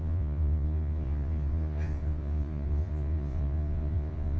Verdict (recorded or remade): remade